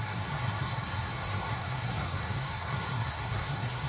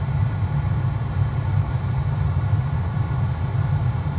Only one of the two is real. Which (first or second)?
second